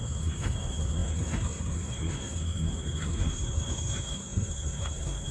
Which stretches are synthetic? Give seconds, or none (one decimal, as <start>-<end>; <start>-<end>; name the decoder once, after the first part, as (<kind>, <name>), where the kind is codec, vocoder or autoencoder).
0.0-5.3 (codec, SNAC)